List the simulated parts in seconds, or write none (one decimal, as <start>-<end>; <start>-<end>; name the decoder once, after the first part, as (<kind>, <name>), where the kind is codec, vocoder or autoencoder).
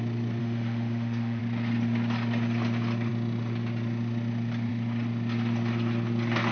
0.4-1.4 (autoencoder, DAC-VAE)